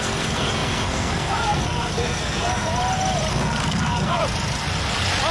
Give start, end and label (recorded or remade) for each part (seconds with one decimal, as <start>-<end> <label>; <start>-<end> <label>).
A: 0.0-2.7 remade; 2.7-3.3 recorded; 3.3-4.2 remade; 4.2-5.3 recorded